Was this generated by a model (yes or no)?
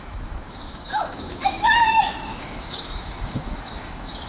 yes